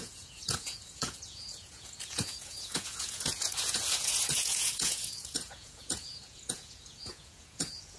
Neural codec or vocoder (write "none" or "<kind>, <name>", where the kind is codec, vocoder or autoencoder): vocoder, Vocos